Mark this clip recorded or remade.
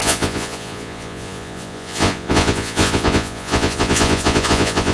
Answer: remade